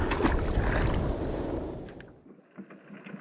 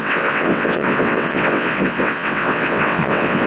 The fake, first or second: second